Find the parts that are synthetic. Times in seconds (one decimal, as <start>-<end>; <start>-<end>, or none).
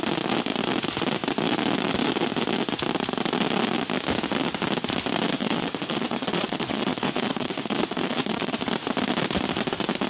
5.4-8.6